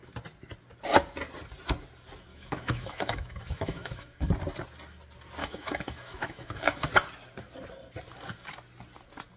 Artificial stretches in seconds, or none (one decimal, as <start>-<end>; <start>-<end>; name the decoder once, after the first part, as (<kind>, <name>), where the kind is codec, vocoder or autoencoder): 2.3-4.3 (autoencoder, DAC-VAE); 5.4-6.9